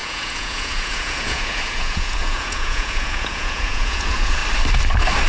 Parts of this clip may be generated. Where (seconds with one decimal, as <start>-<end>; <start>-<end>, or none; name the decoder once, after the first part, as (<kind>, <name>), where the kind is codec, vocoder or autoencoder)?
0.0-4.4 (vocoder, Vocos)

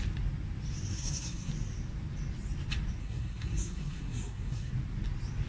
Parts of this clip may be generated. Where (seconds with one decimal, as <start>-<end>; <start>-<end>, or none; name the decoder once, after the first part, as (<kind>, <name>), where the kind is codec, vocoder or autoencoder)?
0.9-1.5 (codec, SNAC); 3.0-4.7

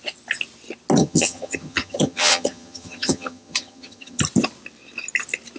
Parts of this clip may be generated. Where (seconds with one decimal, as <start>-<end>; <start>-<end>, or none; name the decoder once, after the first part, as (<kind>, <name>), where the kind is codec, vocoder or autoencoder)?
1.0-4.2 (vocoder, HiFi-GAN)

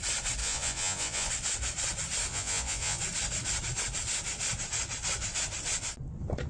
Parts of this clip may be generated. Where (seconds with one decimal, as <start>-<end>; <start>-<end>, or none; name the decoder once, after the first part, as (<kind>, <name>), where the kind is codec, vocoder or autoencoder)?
0.4-1.3 (vocoder, Vocos); 2.3-3.0

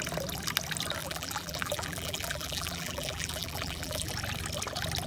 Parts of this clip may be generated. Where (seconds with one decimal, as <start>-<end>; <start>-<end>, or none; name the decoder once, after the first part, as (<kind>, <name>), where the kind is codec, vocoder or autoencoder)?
1.0-4.1 (vocoder, BigVGAN v2)

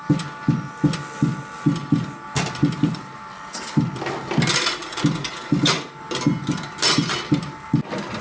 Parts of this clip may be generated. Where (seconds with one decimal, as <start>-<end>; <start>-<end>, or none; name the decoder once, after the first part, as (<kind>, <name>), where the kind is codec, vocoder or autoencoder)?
none

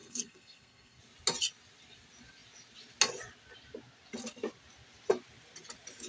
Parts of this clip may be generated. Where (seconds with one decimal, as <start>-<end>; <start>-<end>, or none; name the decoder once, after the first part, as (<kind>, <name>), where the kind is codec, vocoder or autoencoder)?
0.0-1.0 (codec, SNAC)